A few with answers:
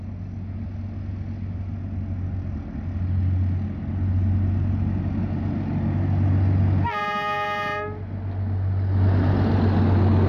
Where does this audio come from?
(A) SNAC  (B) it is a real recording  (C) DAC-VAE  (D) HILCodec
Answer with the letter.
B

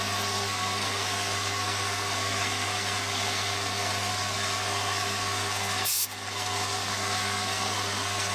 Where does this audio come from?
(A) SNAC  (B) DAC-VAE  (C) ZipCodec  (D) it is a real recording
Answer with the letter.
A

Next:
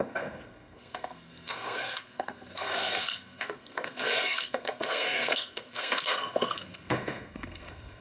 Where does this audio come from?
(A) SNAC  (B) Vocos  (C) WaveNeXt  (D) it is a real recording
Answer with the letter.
A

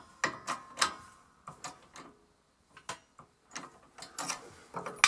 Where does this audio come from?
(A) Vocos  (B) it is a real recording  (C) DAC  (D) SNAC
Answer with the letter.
B